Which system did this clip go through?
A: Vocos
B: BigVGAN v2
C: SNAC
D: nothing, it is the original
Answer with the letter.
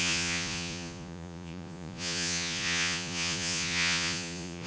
A